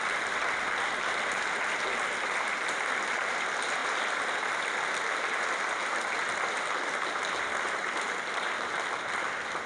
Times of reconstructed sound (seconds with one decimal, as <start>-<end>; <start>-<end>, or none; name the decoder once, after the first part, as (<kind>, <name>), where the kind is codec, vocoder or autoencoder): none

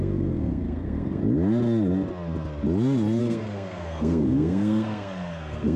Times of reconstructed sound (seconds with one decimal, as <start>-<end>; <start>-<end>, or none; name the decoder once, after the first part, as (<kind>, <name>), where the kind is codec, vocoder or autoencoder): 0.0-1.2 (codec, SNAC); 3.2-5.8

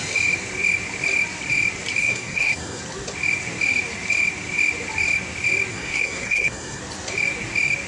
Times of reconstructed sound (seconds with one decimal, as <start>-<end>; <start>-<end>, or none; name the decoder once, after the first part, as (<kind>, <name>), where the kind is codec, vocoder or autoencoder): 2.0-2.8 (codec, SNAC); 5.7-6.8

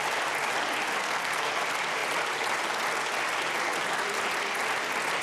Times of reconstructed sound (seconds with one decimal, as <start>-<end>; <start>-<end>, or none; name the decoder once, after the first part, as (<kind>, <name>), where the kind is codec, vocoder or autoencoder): 1.0-1.5 (codec, SNAC)

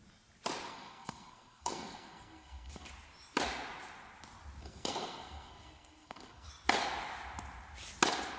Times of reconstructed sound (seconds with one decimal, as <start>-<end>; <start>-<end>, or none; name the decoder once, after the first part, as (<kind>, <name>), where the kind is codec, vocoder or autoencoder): 0.7-2.9 (codec, SNAC); 4.6-6.5